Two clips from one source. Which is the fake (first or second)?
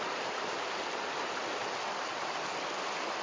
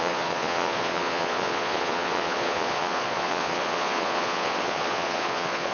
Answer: second